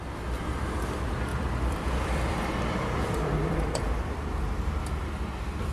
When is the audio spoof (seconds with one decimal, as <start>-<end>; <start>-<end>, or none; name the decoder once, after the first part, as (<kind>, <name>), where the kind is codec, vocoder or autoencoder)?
1.3-4.7 (vocoder, BigVGAN v2)